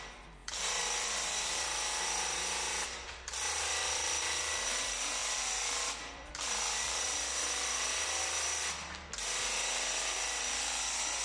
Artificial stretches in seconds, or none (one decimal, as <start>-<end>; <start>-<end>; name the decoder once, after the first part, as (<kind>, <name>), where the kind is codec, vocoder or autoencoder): 0.4-4.7 (vocoder, BigVGAN v2); 5.2-8.2